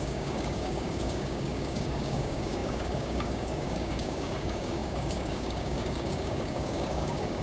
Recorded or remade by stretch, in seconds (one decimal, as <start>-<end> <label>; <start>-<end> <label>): 0.0-7.4 remade